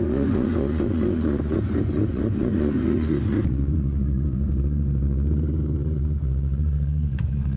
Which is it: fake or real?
fake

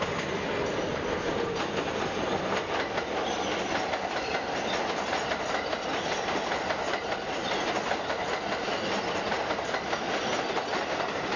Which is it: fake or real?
real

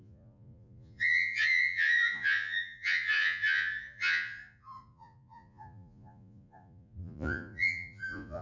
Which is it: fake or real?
fake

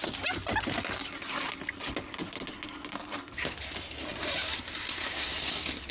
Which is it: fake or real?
real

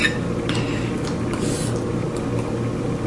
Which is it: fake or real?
real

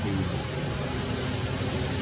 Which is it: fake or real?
real